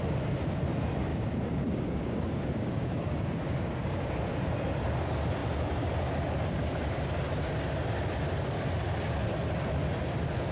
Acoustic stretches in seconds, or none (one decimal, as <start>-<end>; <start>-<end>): 0.0-1.1; 4.1-10.5